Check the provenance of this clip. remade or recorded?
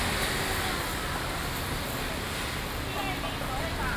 recorded